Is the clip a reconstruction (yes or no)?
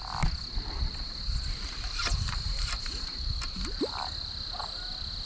no